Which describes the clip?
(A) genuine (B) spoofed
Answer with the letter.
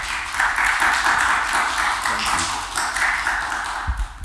A